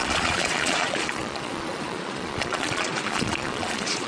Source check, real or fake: fake